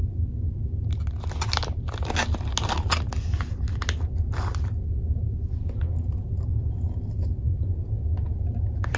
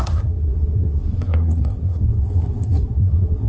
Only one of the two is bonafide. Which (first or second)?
first